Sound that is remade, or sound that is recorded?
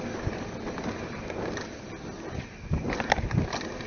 recorded